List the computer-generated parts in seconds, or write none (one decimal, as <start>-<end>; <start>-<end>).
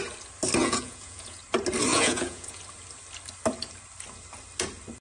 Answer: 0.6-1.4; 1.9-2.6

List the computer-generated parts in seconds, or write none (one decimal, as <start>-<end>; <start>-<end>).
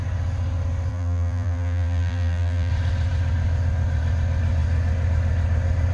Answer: 0.9-2.7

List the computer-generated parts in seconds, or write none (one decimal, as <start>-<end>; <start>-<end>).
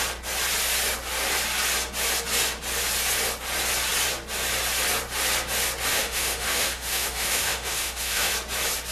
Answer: 5.9-8.3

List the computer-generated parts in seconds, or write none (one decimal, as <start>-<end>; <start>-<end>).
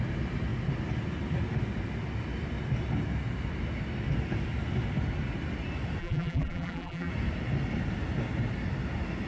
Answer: 6.0-7.1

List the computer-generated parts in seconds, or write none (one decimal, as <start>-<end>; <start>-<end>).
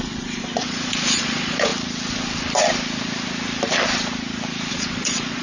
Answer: 0.0-1.7; 4.7-5.4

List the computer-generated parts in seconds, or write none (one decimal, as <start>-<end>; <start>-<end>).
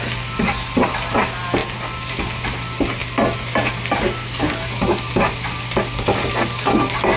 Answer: none